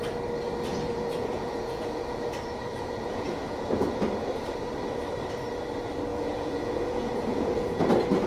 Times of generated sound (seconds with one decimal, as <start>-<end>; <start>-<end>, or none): 0.7-2.2; 2.7-4.0; 6.1-7.8